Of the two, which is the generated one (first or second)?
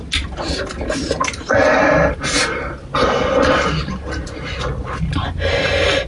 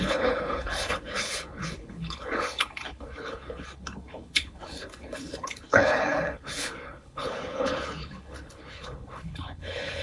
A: second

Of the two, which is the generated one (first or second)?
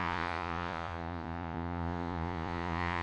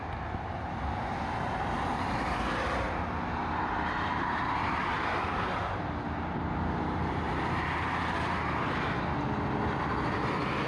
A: first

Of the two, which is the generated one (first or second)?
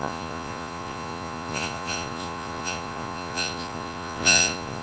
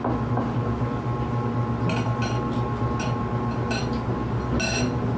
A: first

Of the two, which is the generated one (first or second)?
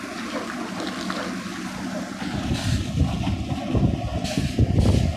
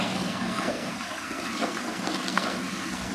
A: second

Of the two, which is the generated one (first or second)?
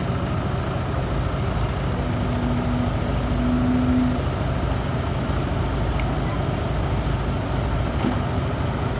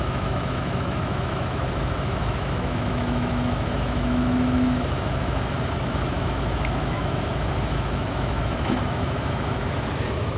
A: second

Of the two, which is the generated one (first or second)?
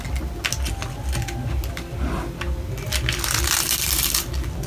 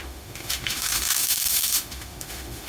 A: second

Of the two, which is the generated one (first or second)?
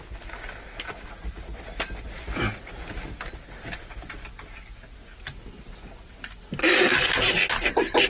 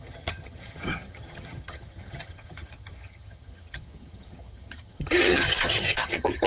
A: second